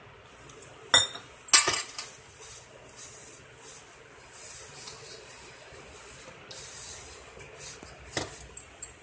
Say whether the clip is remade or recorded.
recorded